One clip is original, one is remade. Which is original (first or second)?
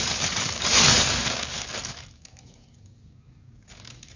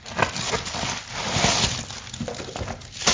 second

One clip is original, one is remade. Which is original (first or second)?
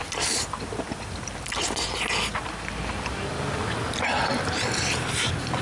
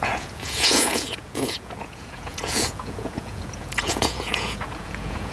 first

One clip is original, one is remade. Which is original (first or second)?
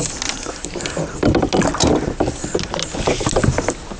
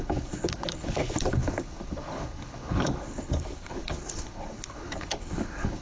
first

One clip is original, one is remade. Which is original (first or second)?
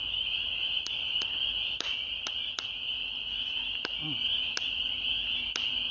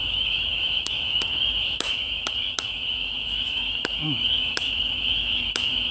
first